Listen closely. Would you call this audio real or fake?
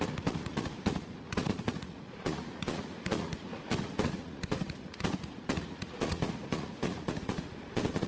fake